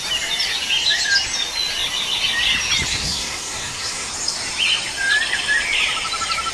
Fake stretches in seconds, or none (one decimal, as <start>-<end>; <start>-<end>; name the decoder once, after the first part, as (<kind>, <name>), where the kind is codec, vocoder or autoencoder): 2.9-4.1 (codec, SNAC)